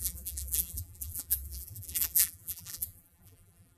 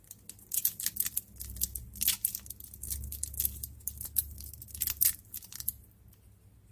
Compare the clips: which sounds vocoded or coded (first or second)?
first